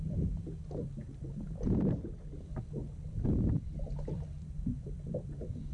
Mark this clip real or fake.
real